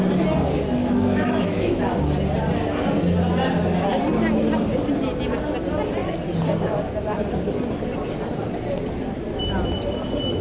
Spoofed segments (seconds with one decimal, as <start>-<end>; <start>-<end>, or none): 0.8-1.7